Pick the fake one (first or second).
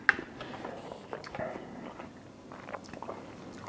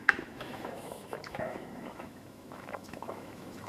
second